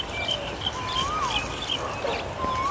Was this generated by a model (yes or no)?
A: no